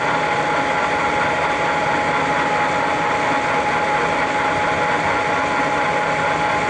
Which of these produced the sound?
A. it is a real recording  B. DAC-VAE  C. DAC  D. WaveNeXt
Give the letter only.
A